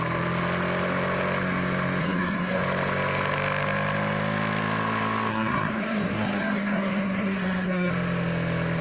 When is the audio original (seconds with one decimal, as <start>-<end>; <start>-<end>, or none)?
0.0-2.0; 2.6-5.3; 7.9-8.8